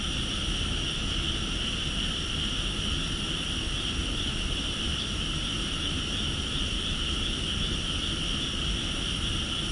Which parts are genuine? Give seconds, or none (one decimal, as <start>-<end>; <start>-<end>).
0.0-4.0; 6.1-9.7